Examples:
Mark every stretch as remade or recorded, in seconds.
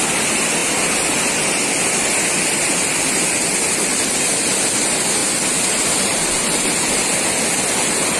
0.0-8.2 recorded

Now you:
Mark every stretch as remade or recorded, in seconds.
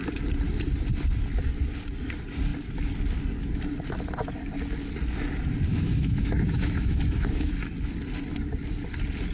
0.0-5.7 recorded; 5.7-7.5 remade; 7.5-9.3 recorded